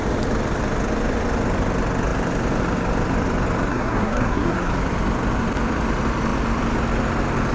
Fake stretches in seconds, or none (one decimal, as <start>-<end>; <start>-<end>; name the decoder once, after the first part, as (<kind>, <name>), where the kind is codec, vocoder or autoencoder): 3.7-4.7 (codec, SNAC)